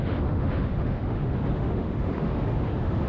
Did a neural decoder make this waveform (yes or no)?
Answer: yes